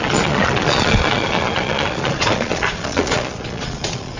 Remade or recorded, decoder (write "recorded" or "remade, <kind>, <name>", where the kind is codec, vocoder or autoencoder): remade, vocoder, Vocos